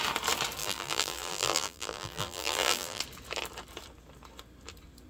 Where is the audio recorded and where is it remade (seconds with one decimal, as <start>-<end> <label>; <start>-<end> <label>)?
0.0-0.6 recorded; 0.6-3.0 remade; 3.0-5.1 recorded